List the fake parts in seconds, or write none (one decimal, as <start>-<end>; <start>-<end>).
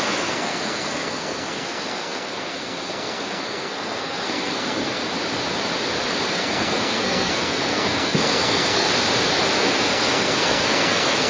0.0-5.0; 6.3-8.9; 9.6-11.3